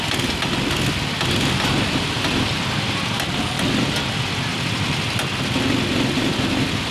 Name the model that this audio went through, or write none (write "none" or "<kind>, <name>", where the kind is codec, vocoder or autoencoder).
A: none